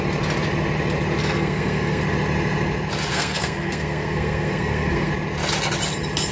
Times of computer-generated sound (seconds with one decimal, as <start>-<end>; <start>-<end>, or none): 1.2-2.0; 3.1-5.1